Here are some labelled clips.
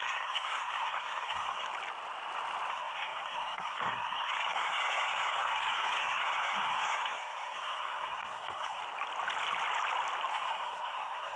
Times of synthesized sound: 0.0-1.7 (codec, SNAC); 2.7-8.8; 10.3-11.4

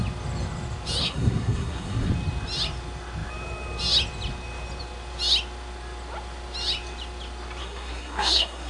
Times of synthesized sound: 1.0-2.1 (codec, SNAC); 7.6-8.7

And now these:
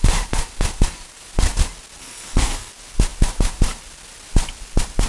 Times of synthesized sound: 2.0-2.7 (codec, SNAC)

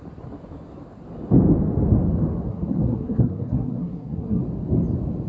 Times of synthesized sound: 2.5-4.4 (codec, SNAC)

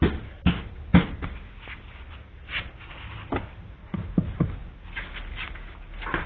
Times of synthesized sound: none

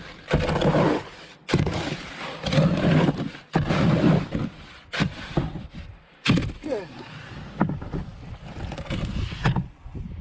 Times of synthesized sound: none

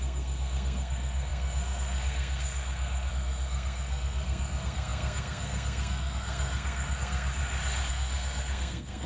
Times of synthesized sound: 0.0-7.4 (codec, SNAC); 7.9-9.1